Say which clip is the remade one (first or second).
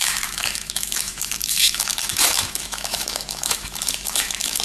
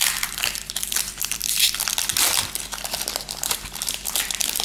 first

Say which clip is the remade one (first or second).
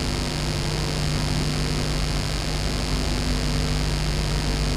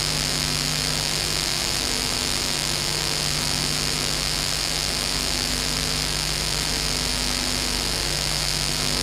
second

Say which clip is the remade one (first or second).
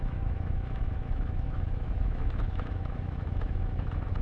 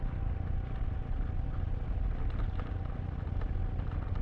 first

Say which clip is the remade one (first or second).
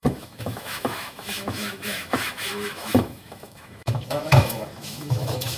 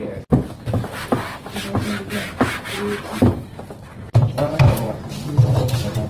first